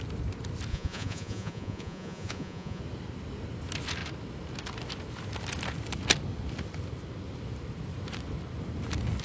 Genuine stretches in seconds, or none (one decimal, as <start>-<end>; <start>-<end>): 0.0-0.7; 2.8-9.2